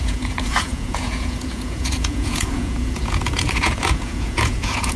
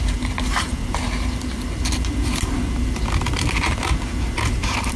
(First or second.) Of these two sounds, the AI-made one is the first